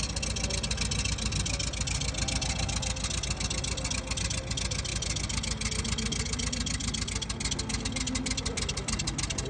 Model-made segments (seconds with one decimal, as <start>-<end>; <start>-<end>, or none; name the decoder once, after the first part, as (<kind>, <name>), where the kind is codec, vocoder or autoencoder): none